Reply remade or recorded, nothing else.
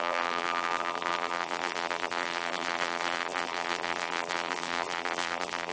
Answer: remade